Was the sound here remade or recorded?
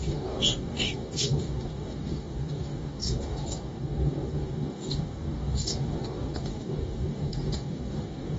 remade